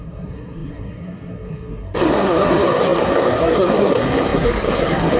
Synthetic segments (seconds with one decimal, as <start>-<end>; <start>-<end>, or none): 0.0-5.2